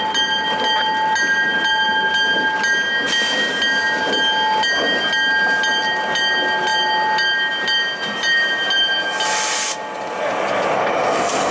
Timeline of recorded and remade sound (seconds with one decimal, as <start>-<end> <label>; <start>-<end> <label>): 0.0-11.5 recorded